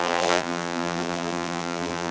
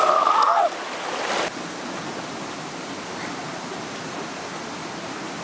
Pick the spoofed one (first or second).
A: first